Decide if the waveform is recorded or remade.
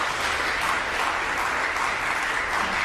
recorded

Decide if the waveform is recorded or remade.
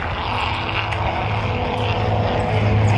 recorded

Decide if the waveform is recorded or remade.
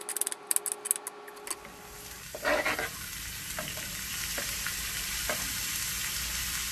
recorded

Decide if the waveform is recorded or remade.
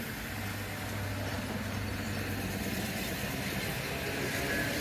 recorded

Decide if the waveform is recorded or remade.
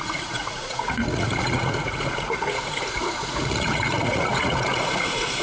remade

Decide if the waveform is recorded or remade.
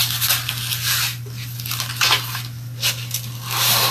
recorded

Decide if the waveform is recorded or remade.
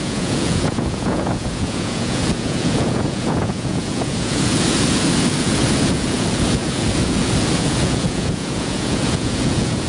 remade